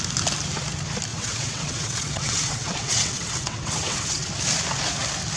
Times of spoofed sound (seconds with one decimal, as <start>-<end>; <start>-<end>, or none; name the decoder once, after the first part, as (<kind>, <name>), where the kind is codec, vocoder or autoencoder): 1.1-4.3 (vocoder, WaveNeXt)